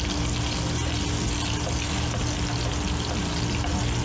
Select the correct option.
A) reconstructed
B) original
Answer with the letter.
B